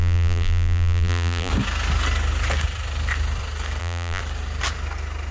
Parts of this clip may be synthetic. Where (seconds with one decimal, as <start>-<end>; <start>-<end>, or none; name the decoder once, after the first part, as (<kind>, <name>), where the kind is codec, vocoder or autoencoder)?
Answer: 0.0-1.5 (vocoder, BigVGAN v2); 3.8-4.2